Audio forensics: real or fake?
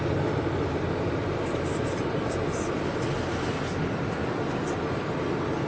real